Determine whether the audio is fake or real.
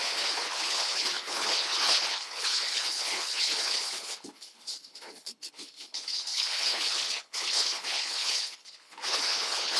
fake